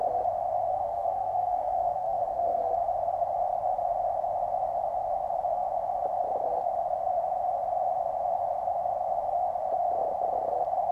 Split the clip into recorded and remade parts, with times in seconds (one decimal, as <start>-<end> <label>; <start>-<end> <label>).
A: 0.0-0.7 recorded; 0.7-2.7 remade; 2.7-10.9 recorded